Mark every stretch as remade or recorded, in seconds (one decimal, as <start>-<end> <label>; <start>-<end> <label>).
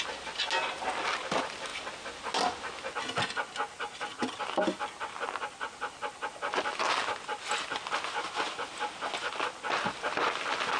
0.0-10.8 recorded